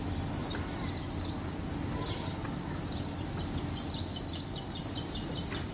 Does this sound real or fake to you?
real